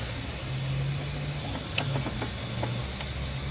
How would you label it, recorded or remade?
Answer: recorded